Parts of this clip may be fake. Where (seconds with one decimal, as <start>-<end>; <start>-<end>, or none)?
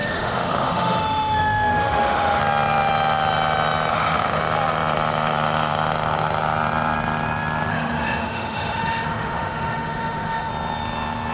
0.0-2.4; 3.9-4.4; 7.7-10.5